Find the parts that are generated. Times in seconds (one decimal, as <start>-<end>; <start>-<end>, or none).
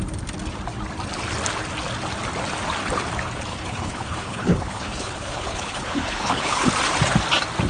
3.5-6.7